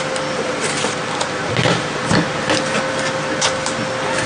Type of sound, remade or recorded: recorded